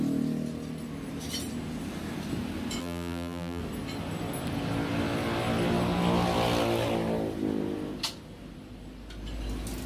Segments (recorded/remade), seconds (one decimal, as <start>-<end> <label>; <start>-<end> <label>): 0.0-2.8 recorded; 2.8-3.6 remade; 3.6-9.9 recorded